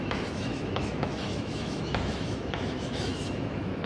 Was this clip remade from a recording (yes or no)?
yes